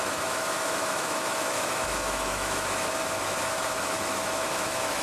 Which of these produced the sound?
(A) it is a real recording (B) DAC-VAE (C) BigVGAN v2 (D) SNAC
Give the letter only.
B